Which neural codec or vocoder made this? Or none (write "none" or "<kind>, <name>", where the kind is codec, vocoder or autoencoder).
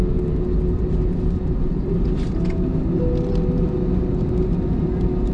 none